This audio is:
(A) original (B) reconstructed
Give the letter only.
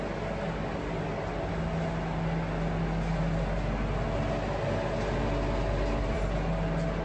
A